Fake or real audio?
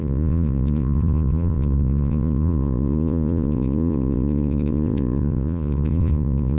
fake